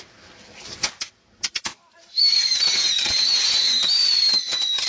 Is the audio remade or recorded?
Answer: recorded